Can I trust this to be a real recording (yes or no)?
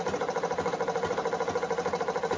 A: yes